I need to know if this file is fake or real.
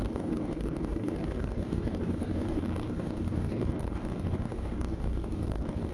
fake